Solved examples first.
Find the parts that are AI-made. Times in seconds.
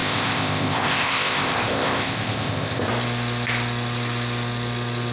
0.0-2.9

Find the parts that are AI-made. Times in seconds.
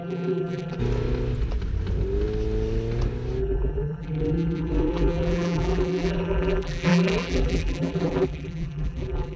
0.0-0.8; 3.4-9.4